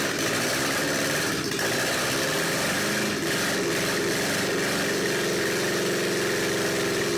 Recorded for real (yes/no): yes